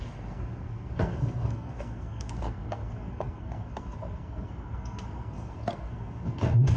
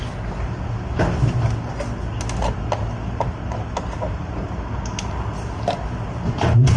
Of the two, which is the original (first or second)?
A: second